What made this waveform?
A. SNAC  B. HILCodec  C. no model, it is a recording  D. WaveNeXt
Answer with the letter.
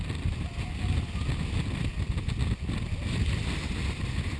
C